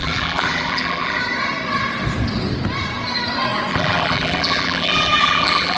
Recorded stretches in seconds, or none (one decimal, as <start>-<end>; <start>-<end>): 1.2-3.7

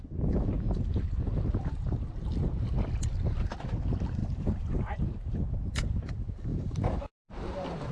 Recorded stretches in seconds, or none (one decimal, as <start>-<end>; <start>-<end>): 0.0-4.2; 5.4-6.5

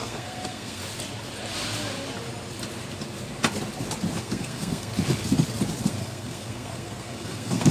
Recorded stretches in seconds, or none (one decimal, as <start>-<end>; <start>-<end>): 0.8-4.2; 4.9-5.8

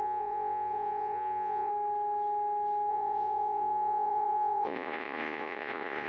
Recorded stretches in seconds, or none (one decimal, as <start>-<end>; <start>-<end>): 1.7-2.9

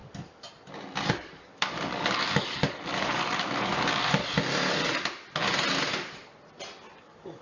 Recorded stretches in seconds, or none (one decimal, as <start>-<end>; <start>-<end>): 0.0-1.1; 4.2-7.0

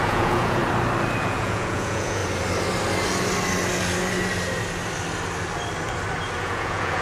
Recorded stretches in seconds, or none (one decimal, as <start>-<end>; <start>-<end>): 0.6-1.2; 2.2-6.4

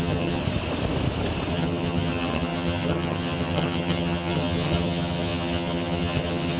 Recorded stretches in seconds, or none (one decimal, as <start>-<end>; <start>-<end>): 0.4-1.5